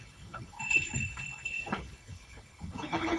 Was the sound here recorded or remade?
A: remade